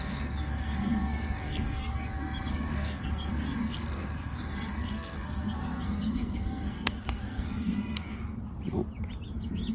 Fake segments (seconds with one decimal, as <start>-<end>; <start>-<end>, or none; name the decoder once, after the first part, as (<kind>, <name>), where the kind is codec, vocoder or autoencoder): 0.0-8.1 (codec, SNAC)